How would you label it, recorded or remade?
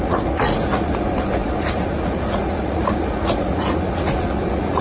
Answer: remade